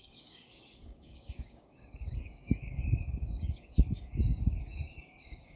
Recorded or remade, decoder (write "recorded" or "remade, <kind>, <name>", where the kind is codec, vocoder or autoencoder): remade, codec, DAC